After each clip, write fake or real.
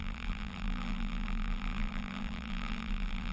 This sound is fake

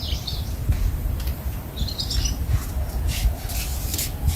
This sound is real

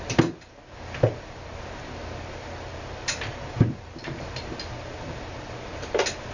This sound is real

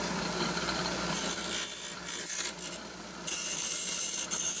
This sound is fake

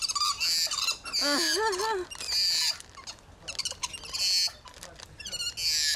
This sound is real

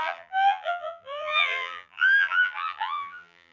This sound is fake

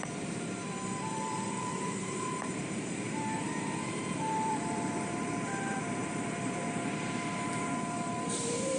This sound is fake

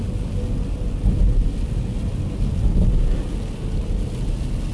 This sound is real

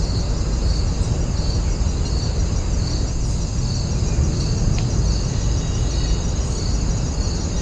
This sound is real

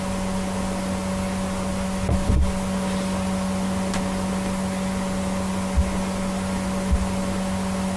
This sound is real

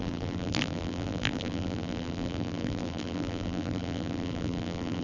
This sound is fake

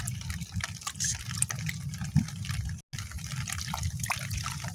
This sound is real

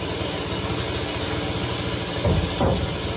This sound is real